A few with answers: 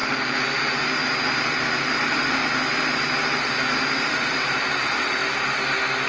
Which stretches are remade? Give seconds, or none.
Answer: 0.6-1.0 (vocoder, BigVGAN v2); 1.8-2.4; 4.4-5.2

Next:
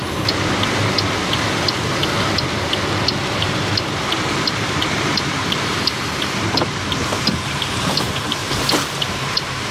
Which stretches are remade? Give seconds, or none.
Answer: 3.2-8.4 (vocoder, BigVGAN v2); 9.0-9.7

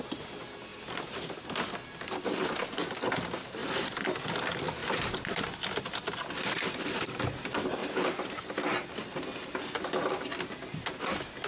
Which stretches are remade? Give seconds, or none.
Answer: 0.7-1.7 (vocoder, BigVGAN v2); 4.8-5.4; 7.8-8.4

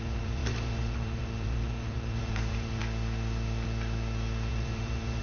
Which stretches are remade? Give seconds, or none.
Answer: 0.0-2.8 (vocoder, BigVGAN v2); 4.5-5.2

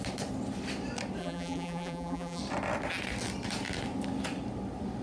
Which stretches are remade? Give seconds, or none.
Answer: 1.2-2.4 (vocoder, BigVGAN v2)